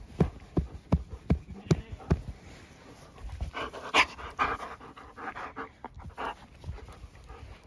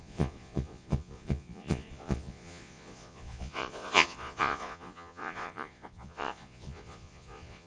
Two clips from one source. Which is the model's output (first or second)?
second